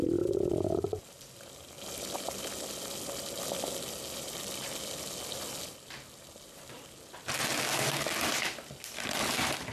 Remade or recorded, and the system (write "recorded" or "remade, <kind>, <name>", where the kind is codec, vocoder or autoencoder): recorded